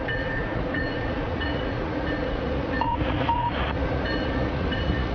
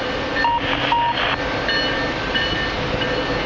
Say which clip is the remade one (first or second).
first